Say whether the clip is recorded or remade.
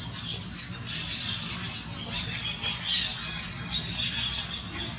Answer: recorded